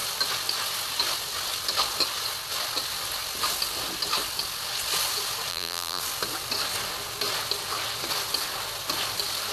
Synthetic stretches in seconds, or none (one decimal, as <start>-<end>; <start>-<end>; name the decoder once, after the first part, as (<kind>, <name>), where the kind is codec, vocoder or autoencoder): 5.5-6.0 (vocoder, BigVGAN v2)